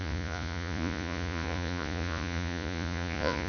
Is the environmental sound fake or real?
fake